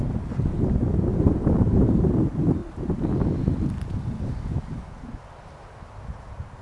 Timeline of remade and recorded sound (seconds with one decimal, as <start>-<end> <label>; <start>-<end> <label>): 0.0-1.1 recorded; 1.1-2.0 remade; 2.0-6.6 recorded